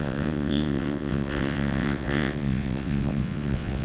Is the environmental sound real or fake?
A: fake